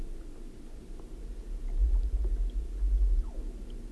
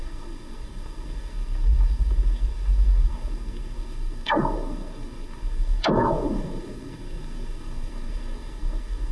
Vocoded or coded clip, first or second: second